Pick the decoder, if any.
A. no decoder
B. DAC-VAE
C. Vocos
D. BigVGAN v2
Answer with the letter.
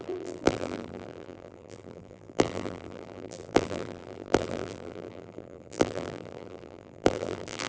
D